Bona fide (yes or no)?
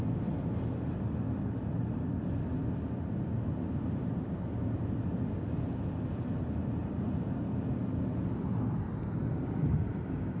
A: yes